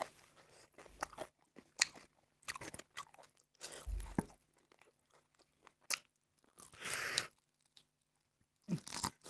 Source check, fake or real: real